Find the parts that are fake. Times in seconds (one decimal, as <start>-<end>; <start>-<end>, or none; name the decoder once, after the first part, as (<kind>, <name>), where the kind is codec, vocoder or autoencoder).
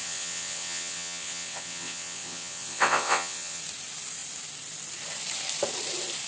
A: 0.0-3.6 (vocoder, WaveNeXt)